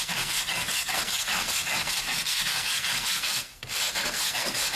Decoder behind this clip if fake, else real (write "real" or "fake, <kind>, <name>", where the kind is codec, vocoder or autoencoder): fake, codec, SNAC